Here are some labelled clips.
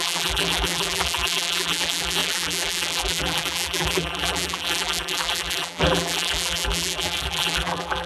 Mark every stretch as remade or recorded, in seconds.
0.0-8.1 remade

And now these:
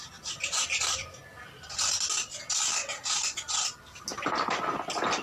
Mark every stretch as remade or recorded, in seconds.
0.0-5.2 recorded

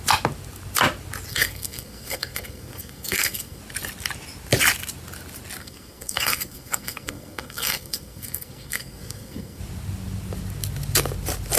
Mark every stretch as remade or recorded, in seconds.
0.0-1.3 recorded; 1.3-3.6 remade; 3.6-5.6 recorded; 5.6-9.6 remade; 9.6-11.6 recorded